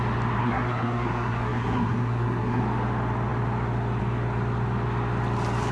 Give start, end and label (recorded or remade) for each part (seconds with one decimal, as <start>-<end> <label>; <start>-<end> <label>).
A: 0.0-0.4 recorded; 0.4-2.6 remade; 2.6-5.7 recorded